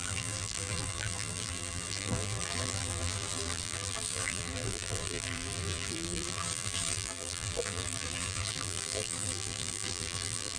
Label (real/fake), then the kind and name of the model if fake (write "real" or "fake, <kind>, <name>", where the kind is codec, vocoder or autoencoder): fake, vocoder, BigVGAN v2